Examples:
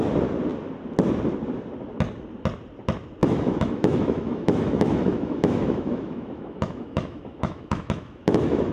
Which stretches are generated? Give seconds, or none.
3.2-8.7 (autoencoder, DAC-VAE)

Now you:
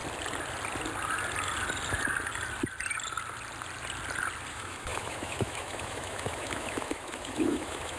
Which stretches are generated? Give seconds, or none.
4.5-8.0 (autoencoder, DAC-VAE)

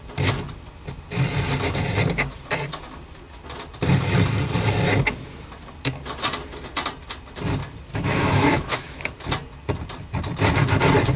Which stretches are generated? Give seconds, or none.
7.9-9.0 (autoencoder, DAC-VAE)

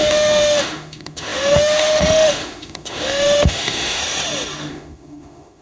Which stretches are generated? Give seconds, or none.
0.0-4.0 (autoencoder, DAC-VAE); 4.7-5.6

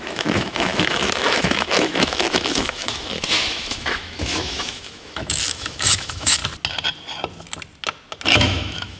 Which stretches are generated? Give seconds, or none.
0.0-6.4 (autoencoder, DAC-VAE); 8.4-9.0

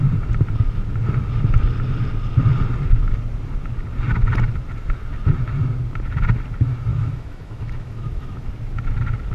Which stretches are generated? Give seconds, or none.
6.9-8.5 (autoencoder, DAC-VAE)

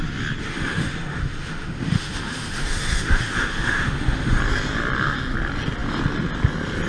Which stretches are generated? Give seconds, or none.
0.4-4.4 (autoencoder, DAC-VAE)

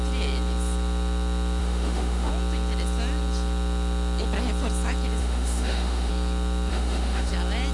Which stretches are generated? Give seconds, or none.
1.6-2.3 (autoencoder, DAC-VAE); 5.2-6.1; 6.7-7.3